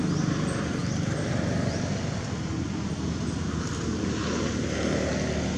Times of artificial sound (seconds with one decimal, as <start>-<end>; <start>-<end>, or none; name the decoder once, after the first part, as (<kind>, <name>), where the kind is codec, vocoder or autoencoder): none

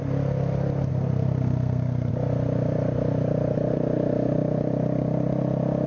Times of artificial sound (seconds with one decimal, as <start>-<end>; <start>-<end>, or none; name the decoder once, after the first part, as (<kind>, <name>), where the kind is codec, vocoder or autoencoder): 0.9-2.1 (codec, SNAC)